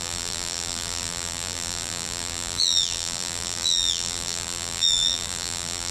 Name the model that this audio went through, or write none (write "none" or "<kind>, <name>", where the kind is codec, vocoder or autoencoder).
vocoder, BigVGAN v2